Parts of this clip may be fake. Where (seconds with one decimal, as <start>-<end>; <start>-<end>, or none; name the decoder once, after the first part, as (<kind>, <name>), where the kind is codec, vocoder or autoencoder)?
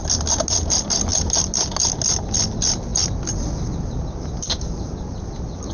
none